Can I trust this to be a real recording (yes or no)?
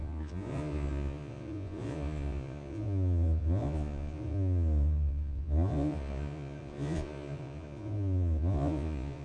no